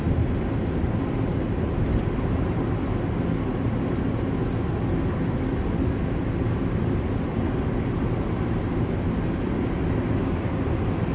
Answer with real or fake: real